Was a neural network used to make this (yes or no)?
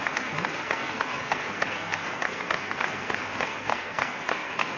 yes